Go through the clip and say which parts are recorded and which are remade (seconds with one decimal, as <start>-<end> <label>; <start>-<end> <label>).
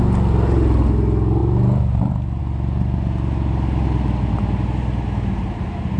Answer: 0.0-6.0 recorded